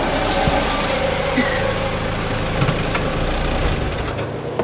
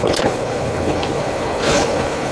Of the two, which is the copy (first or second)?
second